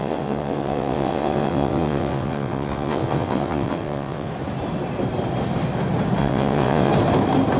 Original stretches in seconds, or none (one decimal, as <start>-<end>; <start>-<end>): 4.3-6.2; 6.9-7.6